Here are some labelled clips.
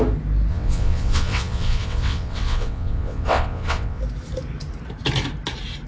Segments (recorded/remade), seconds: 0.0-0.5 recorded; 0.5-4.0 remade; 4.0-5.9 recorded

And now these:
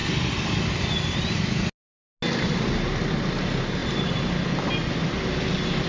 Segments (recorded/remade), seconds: 0.0-5.9 recorded

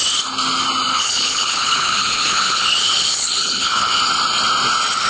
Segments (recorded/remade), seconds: 0.0-0.9 recorded; 0.9-4.0 remade; 4.0-5.1 recorded

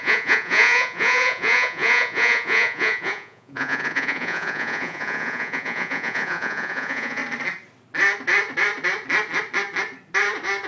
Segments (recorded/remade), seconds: 0.0-7.2 remade; 7.2-10.7 recorded